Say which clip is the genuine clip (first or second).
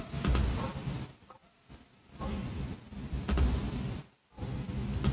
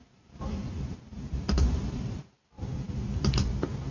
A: first